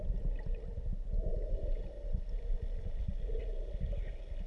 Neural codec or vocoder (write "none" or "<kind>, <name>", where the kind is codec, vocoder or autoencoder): none